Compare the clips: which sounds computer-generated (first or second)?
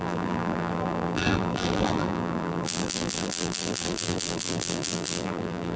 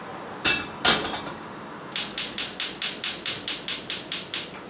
first